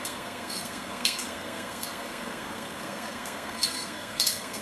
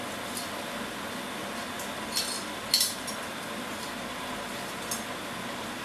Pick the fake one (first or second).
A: first